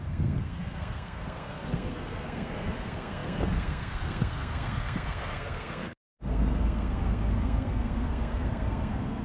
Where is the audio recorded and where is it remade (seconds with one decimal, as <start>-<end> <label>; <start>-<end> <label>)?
0.0-9.2 remade